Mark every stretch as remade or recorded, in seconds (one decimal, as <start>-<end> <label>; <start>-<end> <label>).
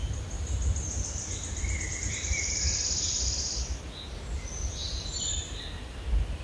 0.0-3.8 remade; 3.8-4.8 recorded; 4.8-5.6 remade; 5.6-6.4 recorded